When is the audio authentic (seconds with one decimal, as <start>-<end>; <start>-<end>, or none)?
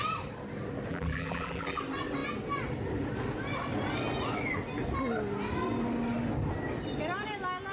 0.0-0.9; 1.8-7.7